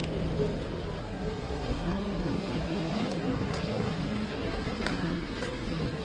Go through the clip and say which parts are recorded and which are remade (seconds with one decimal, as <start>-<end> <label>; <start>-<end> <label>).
0.0-1.0 recorded; 1.0-6.0 remade

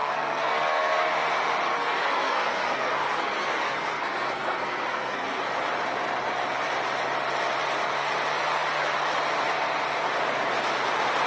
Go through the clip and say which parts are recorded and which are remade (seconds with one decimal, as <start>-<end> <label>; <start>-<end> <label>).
0.0-1.1 remade; 1.1-1.7 recorded; 1.7-5.4 remade; 5.4-11.3 recorded

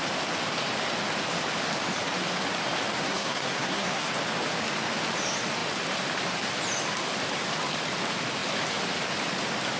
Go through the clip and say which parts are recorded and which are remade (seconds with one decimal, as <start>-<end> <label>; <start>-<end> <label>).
0.0-3.0 recorded; 3.0-4.1 remade; 4.1-9.8 recorded

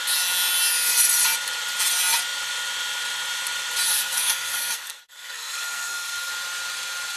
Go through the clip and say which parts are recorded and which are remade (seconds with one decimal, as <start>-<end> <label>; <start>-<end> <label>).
0.0-3.9 recorded; 3.9-6.3 remade; 6.3-7.2 recorded

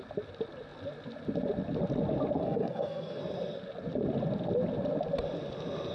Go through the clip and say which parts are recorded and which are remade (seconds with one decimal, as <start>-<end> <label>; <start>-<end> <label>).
0.0-2.4 recorded; 2.4-3.2 remade; 3.2-5.9 recorded

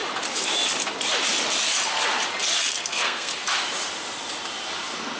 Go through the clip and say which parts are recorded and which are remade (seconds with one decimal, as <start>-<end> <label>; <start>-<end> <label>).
0.0-2.7 recorded; 2.7-3.3 remade; 3.3-5.2 recorded

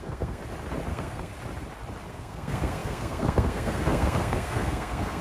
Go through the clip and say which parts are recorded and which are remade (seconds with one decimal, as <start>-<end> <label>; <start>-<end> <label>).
0.0-0.4 remade; 0.4-0.9 recorded; 0.9-1.3 remade; 1.3-2.1 recorded; 2.1-5.2 remade